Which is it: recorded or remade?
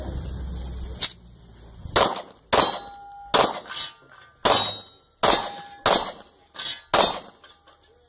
recorded